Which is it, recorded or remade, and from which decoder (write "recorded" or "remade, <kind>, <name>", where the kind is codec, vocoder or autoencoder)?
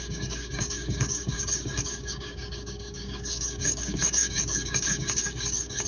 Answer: remade, codec, DAC